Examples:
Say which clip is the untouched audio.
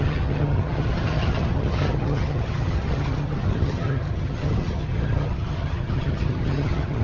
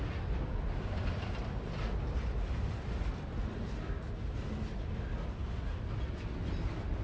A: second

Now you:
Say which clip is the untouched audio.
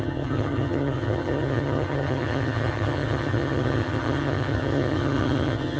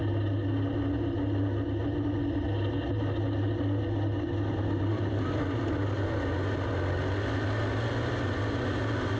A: second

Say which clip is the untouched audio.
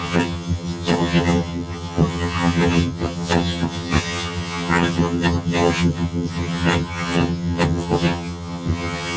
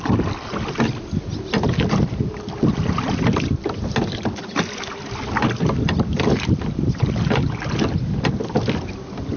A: second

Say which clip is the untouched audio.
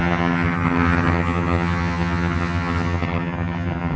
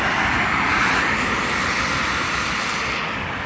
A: second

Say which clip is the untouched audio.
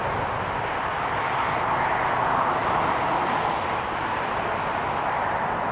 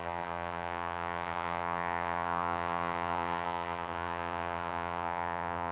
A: first